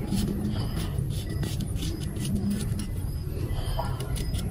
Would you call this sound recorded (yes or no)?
no